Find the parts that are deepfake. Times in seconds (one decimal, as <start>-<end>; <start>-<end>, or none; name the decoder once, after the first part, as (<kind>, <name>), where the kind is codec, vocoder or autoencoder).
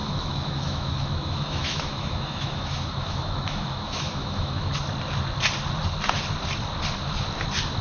0.0-4.7 (autoencoder, DAC-VAE)